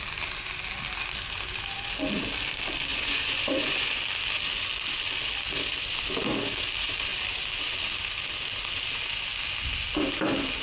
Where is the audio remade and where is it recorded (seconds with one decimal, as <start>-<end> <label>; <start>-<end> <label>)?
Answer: 0.0-2.9 recorded; 2.9-4.0 remade; 4.0-10.6 recorded